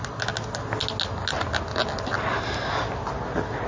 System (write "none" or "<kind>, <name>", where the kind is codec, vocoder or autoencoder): none